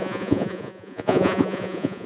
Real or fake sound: fake